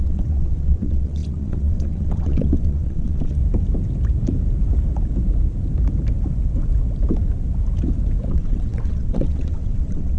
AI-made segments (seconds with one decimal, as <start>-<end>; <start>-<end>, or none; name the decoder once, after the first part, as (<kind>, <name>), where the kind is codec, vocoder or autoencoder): 0.0-3.4 (vocoder, WaveNeXt); 8.3-10.2